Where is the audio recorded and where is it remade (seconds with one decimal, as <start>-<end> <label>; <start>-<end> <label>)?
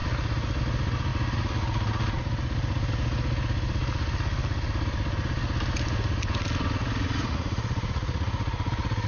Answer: 0.0-6.8 recorded; 6.8-8.7 remade; 8.7-9.1 recorded